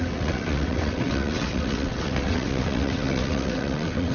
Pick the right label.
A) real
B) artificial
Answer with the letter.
B